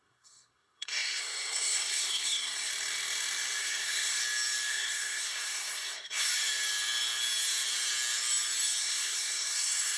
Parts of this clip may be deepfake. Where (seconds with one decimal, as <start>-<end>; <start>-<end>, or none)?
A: 0.0-2.7; 3.6-4.2; 4.7-6.3; 8.8-10.0